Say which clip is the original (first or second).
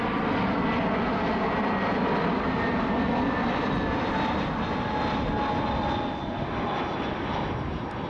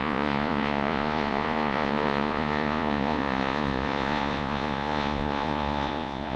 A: first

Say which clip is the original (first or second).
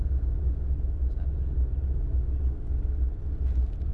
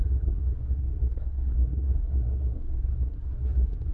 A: first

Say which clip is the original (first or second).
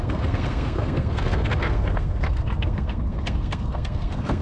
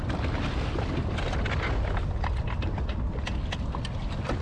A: second